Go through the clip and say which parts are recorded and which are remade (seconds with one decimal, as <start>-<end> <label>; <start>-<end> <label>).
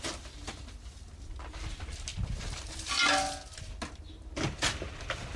0.0-5.4 recorded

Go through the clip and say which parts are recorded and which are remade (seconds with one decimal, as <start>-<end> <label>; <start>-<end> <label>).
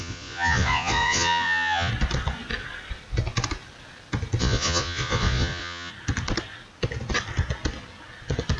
0.0-1.9 remade; 1.9-4.4 recorded; 4.4-5.9 remade; 5.9-8.6 recorded